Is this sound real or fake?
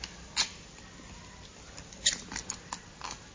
real